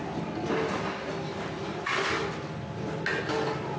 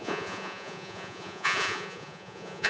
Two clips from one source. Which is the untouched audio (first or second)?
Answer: first